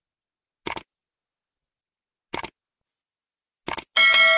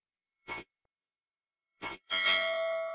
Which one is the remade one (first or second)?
second